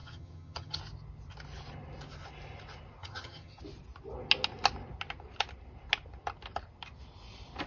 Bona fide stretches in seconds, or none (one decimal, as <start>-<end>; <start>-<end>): 0.8-3.0; 3.6-7.7